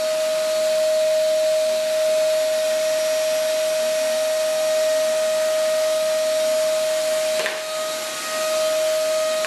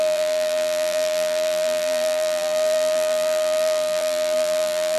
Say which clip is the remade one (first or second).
second